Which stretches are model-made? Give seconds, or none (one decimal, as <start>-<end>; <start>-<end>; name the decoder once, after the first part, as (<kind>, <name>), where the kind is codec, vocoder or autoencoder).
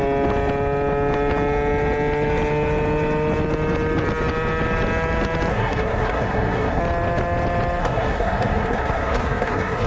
5.5-6.8 (codec, SNAC); 7.8-9.9